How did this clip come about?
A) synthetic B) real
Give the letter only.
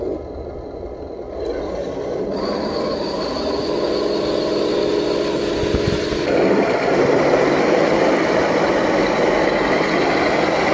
B